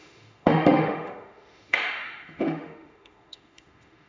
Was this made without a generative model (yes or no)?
no